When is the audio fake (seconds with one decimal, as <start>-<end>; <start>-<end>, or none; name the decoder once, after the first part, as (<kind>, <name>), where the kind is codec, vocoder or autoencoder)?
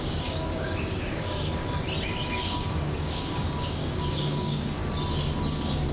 0.0-1.6 (codec, DAC); 2.3-4.8